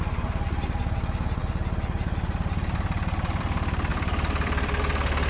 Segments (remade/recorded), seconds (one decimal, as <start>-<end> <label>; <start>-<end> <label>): 0.0-3.9 recorded; 3.9-4.8 remade; 4.8-5.3 recorded